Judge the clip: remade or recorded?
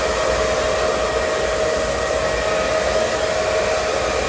recorded